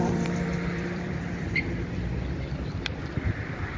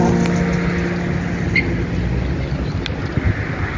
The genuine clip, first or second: second